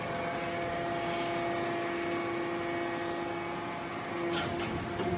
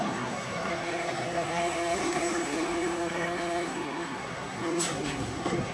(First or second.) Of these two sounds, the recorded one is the first